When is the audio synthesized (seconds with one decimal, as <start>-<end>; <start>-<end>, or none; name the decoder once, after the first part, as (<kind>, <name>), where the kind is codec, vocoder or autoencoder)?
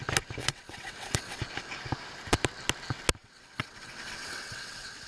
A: 0.4-1.4 (vocoder, WaveNeXt); 3.2-5.1